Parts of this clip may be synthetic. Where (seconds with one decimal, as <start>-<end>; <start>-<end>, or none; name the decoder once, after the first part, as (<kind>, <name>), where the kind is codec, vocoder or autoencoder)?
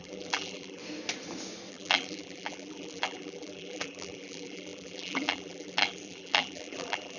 0.0-0.8 (vocoder, BigVGAN v2); 1.7-7.2